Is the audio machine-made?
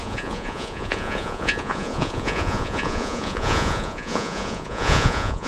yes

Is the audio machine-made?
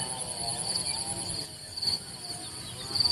no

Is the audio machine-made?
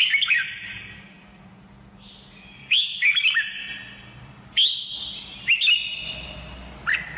no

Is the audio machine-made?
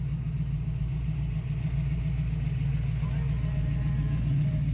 no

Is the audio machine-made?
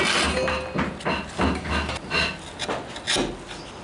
no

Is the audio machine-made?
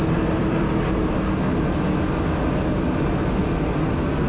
no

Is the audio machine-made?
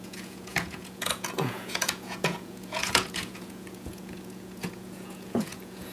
yes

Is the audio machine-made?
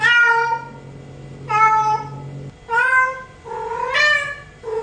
no